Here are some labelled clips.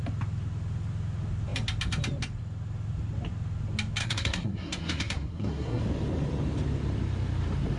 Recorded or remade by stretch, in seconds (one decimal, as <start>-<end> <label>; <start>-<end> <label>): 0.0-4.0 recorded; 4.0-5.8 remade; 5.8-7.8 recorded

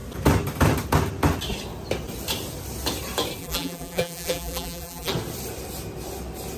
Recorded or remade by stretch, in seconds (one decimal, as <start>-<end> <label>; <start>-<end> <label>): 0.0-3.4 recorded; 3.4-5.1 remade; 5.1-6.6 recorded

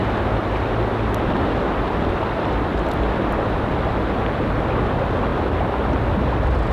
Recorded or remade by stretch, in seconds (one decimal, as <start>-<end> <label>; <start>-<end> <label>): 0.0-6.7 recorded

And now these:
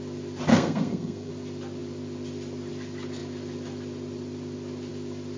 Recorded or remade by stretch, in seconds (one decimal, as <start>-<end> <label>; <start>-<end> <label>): 0.0-0.5 recorded; 0.5-1.3 remade; 1.3-5.4 recorded